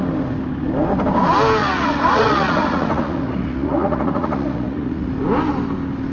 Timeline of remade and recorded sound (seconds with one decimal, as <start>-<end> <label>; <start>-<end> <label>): 0.0-1.6 recorded; 1.6-5.1 remade; 5.1-6.1 recorded